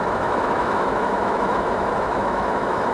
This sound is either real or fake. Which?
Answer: fake